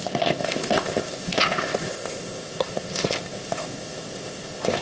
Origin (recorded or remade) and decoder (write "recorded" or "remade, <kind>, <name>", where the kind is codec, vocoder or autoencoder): remade, codec, ZipCodec